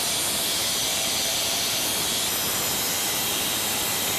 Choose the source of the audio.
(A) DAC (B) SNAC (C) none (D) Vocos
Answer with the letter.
C